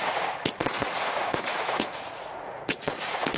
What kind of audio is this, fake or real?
fake